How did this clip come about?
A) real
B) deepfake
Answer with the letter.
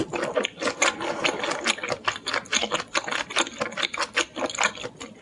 A